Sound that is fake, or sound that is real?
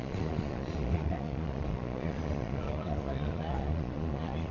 fake